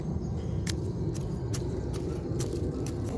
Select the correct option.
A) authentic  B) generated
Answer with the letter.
A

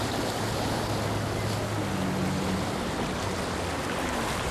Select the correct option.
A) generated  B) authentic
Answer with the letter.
B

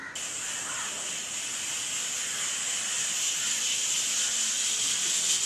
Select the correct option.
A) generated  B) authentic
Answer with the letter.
B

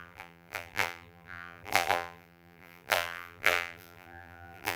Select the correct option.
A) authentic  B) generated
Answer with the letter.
B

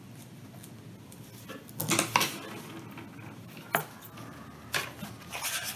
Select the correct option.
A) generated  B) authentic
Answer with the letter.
B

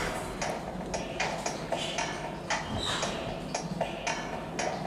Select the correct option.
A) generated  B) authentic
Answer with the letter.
B